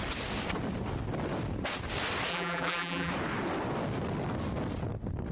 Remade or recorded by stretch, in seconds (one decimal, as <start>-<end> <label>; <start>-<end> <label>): 0.0-2.3 recorded; 2.3-3.1 remade; 3.1-5.3 recorded